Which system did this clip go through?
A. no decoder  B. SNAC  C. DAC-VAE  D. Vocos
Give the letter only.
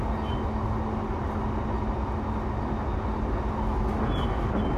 A